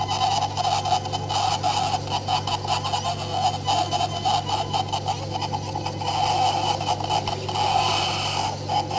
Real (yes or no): yes